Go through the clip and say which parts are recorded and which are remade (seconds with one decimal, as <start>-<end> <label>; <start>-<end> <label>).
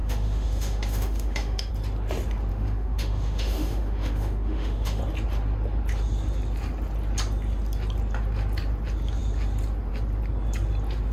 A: 0.0-1.7 remade; 1.7-2.5 recorded; 2.5-5.0 remade; 5.0-11.1 recorded